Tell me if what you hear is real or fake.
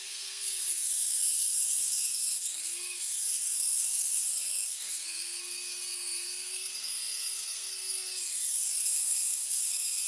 fake